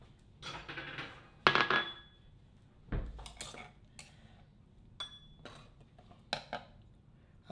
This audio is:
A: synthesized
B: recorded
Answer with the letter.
B